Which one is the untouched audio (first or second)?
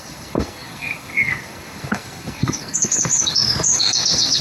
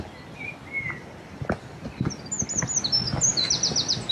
second